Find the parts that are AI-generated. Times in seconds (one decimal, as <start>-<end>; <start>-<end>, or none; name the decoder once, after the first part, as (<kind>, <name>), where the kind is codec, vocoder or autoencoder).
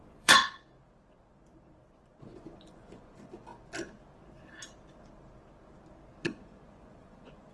0.0-0.4 (vocoder, Vocos); 2.2-3.5; 6.2-7.5